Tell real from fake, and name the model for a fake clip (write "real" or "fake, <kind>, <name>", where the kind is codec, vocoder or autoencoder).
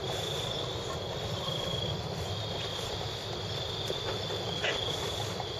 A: real